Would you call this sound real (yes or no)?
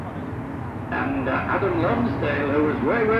yes